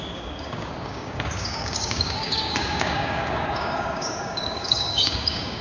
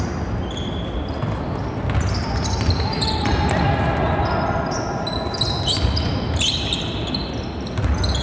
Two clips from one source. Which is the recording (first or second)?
second